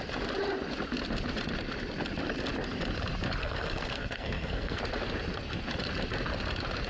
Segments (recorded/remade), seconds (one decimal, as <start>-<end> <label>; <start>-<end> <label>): 0.0-3.4 recorded; 3.4-4.8 remade; 4.8-6.9 recorded

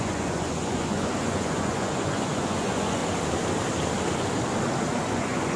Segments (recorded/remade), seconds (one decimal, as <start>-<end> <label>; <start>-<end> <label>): 0.0-3.0 remade; 3.0-5.1 recorded; 5.1-5.6 remade

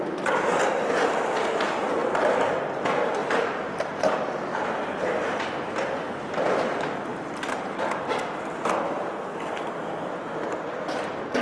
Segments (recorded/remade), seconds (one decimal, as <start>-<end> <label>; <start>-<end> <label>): 0.0-3.2 recorded; 3.2-4.2 remade; 4.2-7.1 recorded; 7.1-8.2 remade; 8.2-11.4 recorded